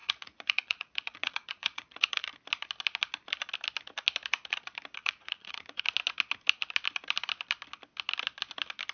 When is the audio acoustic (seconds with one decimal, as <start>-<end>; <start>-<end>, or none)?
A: 2.3-5.0; 5.8-8.9